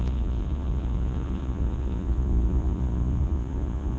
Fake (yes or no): yes